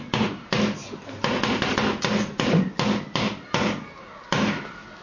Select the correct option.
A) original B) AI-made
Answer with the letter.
A